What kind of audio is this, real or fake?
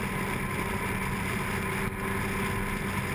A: real